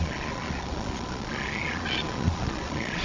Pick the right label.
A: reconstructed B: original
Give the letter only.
A